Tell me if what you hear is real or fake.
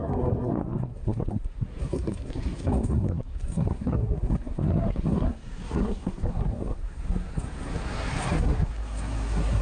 fake